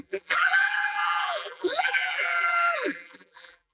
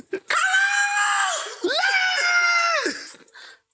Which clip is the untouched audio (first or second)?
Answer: second